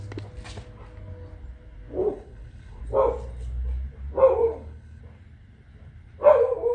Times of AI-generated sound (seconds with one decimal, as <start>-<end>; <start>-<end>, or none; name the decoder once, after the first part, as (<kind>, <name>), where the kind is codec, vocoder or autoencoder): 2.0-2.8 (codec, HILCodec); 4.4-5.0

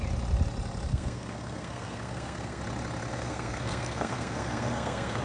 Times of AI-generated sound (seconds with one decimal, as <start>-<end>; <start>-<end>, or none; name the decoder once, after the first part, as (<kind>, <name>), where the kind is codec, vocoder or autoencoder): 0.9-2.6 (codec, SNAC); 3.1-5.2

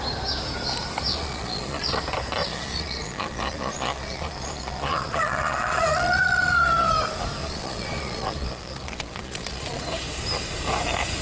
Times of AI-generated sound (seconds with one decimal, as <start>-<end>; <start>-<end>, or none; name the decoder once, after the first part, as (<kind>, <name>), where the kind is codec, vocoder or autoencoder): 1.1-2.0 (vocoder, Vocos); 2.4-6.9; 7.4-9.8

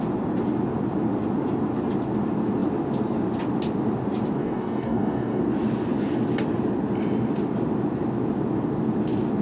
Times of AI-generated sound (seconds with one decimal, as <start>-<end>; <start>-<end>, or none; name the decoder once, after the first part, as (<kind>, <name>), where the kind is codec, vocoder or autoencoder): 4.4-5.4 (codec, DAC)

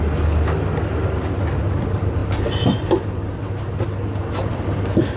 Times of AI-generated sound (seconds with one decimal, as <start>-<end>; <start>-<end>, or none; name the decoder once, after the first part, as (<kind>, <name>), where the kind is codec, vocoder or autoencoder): none